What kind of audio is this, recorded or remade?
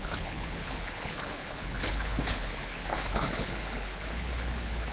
remade